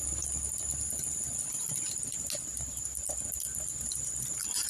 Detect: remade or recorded recorded